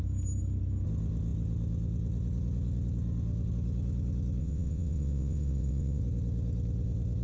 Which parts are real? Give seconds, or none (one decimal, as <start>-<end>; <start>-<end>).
0.0-4.4; 6.0-7.2